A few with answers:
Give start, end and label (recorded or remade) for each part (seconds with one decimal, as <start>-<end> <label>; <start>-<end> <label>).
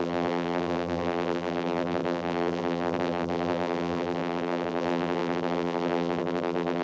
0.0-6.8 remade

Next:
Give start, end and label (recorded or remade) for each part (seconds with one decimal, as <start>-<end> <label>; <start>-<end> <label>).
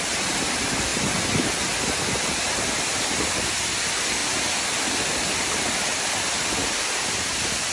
0.0-7.7 recorded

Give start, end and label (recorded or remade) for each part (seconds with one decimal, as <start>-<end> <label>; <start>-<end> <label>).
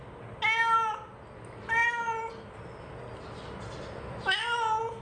0.0-5.0 recorded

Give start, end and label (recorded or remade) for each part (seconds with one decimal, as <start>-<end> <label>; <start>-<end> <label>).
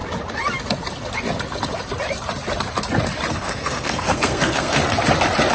0.0-3.3 recorded; 3.3-4.8 remade; 4.8-5.5 recorded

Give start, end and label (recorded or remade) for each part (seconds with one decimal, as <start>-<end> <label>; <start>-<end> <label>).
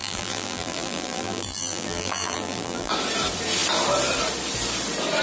0.0-2.9 remade; 2.9-5.2 recorded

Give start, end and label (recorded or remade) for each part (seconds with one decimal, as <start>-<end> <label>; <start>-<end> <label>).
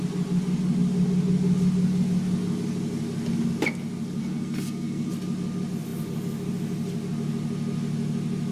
0.0-4.2 recorded; 4.2-5.1 remade; 5.1-8.5 recorded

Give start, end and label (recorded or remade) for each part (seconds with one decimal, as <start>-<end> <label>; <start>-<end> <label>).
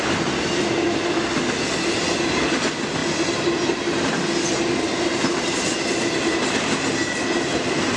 0.0-8.0 recorded